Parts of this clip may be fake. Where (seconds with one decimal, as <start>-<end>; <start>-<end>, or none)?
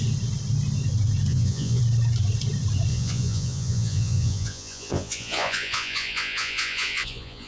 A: 1.3-1.8; 2.9-7.5